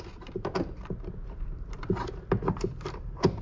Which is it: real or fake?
real